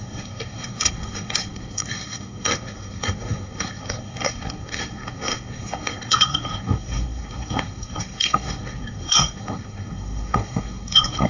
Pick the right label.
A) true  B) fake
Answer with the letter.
B